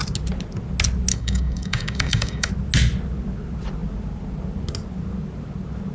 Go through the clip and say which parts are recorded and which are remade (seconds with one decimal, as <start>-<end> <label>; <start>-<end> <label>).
0.0-1.1 recorded; 1.1-2.5 remade; 2.5-5.9 recorded